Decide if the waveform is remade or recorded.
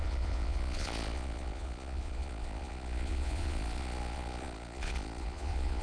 remade